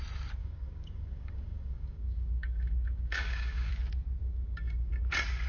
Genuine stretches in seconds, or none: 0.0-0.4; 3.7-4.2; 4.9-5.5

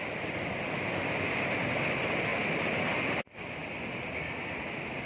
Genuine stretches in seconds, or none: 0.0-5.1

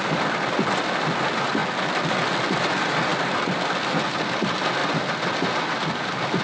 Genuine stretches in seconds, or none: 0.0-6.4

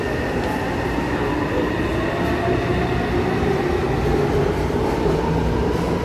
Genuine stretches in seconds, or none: 0.0-6.0

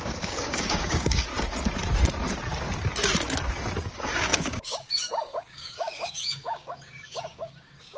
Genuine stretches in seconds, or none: 1.3-3.9

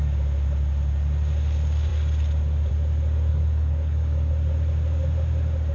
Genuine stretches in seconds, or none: 0.0-3.3; 4.3-5.7